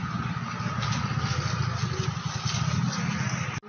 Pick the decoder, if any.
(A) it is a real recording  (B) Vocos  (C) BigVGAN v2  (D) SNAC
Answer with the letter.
A